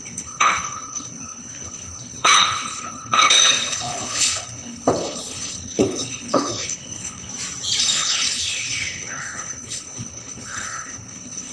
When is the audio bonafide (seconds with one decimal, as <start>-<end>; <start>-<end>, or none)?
7.3-7.8